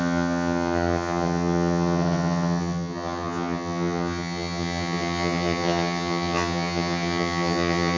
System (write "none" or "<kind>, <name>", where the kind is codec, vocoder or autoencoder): vocoder, HiFi-GAN